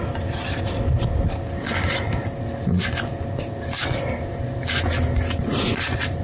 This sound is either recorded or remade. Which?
recorded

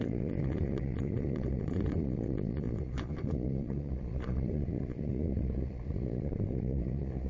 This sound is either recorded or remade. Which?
remade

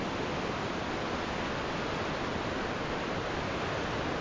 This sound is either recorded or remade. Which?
recorded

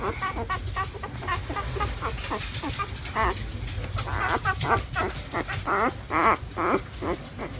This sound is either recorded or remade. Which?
recorded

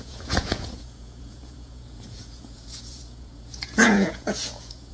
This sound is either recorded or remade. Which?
remade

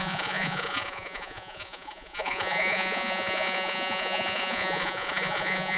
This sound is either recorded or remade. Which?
remade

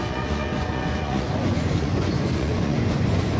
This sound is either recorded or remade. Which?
remade